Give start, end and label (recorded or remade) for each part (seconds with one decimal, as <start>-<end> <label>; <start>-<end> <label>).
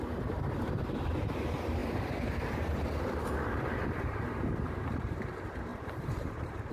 0.0-6.7 remade